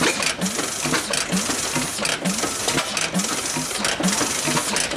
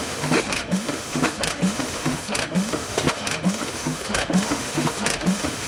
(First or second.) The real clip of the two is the first